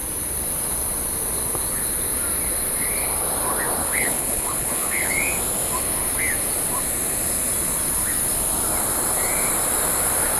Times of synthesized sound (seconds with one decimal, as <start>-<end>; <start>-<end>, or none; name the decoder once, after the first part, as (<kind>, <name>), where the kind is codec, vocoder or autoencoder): 3.8-5.1 (codec, HILCodec)